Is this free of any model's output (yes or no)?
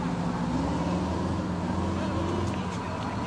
yes